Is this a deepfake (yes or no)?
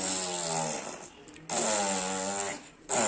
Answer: no